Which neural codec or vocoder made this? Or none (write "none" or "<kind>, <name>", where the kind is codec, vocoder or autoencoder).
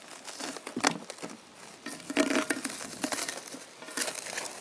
none